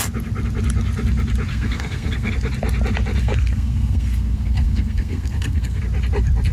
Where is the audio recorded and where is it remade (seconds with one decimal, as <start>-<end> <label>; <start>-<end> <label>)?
0.0-1.5 recorded; 1.5-2.3 remade; 2.3-3.2 recorded; 3.2-5.8 remade; 5.8-6.5 recorded